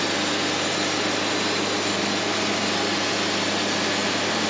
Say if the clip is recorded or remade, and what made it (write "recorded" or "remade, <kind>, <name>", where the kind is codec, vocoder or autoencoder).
recorded